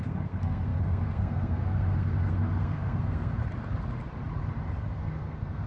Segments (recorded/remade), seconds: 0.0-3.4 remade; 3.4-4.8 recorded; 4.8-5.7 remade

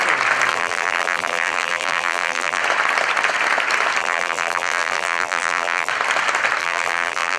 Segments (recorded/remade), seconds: 0.0-0.5 recorded; 0.5-2.6 remade; 2.6-4.0 recorded; 4.0-5.9 remade; 5.9-6.6 recorded; 6.6-7.4 remade

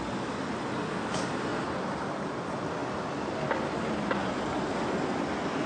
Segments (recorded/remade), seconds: 0.0-5.7 recorded

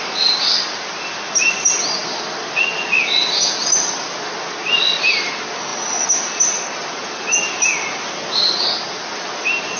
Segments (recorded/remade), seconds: 0.0-9.8 recorded

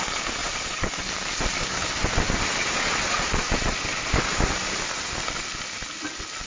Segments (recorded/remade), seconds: 0.0-0.4 recorded; 0.4-1.0 remade; 1.0-2.6 recorded; 2.6-3.7 remade; 3.7-6.5 recorded

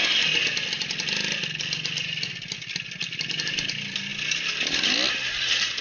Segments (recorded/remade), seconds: 0.0-5.8 recorded